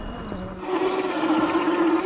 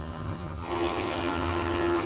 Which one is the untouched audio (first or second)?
first